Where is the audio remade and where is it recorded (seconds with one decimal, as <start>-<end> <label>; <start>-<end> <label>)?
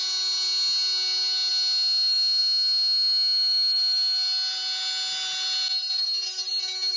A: 0.0-7.0 recorded